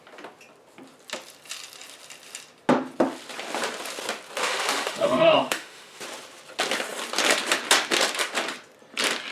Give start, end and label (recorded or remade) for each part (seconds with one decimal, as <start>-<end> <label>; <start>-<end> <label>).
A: 0.0-4.4 recorded; 4.4-6.0 remade; 6.0-9.3 recorded